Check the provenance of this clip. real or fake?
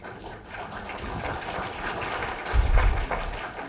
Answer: real